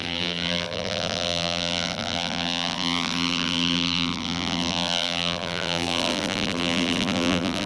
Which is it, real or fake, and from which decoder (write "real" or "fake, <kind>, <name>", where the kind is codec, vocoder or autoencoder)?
fake, vocoder, BigVGAN v2